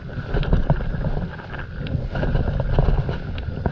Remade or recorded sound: recorded